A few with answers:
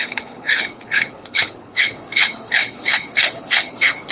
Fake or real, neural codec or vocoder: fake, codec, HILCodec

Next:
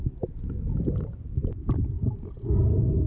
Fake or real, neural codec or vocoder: real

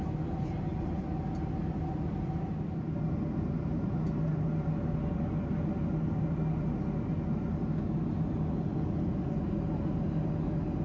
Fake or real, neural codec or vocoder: real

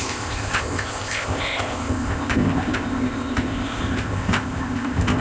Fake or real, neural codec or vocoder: fake, codec, ZipCodec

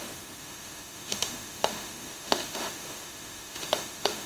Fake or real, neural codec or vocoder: fake, autoencoder, DAC-VAE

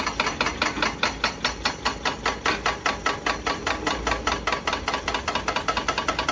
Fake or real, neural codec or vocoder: real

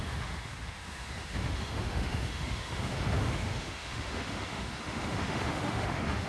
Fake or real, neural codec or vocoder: fake, autoencoder, DAC-VAE